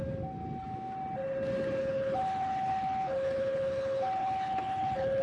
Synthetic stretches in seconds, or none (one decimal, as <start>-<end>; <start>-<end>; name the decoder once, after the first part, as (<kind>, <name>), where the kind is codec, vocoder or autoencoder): 1.8-5.2 (codec, HILCodec)

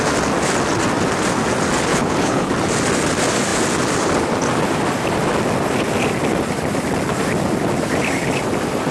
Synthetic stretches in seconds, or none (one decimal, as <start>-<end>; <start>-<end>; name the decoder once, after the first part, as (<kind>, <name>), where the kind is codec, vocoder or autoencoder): 1.9-2.5 (codec, HILCodec)

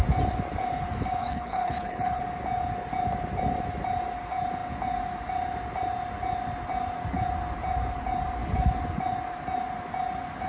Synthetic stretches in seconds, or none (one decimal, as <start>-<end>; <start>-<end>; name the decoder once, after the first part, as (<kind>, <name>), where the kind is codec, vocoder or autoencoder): 1.2-2.2 (codec, HILCodec)

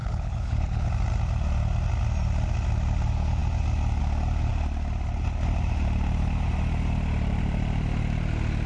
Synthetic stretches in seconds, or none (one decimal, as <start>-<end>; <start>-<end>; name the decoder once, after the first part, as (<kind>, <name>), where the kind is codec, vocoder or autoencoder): 0.0-0.9 (codec, HILCodec)